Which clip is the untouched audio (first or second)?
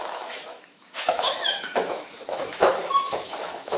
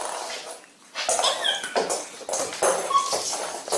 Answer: second